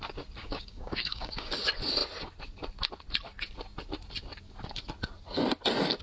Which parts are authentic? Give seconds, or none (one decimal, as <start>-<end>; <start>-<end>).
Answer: 0.0-0.4; 1.6-6.0